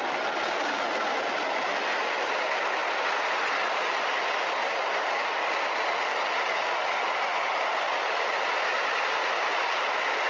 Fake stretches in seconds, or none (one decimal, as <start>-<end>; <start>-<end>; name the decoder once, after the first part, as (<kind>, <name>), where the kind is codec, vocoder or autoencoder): 2.8-5.5 (vocoder, BigVGAN v2); 7.3-8.7